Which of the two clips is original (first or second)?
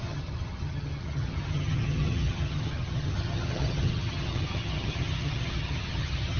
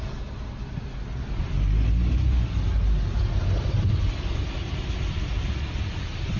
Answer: second